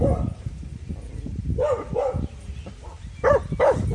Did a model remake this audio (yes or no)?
no